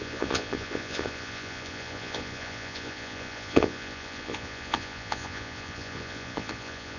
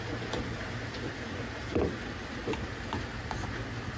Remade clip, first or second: first